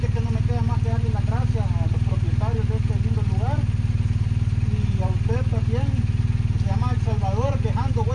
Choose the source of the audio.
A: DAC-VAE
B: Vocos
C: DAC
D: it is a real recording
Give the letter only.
D